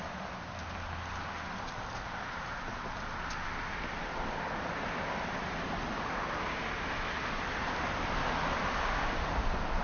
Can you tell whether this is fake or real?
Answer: real